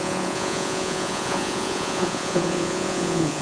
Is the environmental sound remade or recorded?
remade